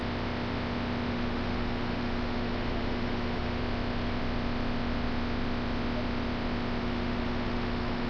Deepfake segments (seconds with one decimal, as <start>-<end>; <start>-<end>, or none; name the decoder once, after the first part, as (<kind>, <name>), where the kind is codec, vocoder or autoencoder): 1.1-3.6 (autoencoder, DAC-VAE); 6.8-8.1